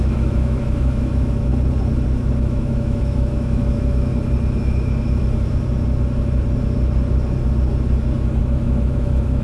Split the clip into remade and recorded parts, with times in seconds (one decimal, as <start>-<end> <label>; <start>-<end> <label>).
0.0-1.5 remade; 1.5-2.3 recorded; 2.3-4.1 remade; 4.1-8.4 recorded; 8.4-9.4 remade